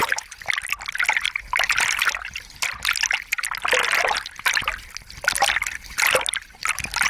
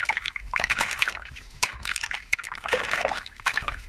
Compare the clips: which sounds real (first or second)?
first